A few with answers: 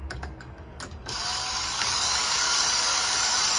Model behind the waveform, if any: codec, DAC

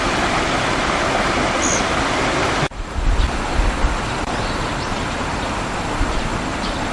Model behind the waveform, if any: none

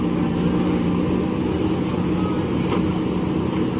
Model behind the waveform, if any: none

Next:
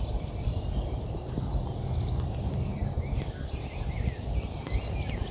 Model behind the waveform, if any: none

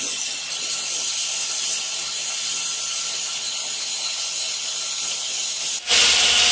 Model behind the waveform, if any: none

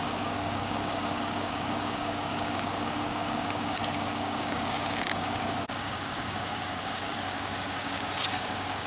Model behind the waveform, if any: codec, DAC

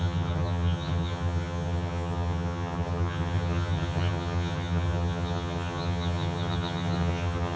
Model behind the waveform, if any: vocoder, HiFi-GAN